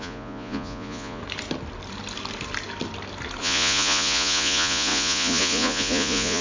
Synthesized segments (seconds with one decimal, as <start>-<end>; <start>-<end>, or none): 0.0-1.2; 3.4-6.4